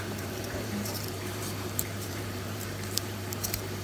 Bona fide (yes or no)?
no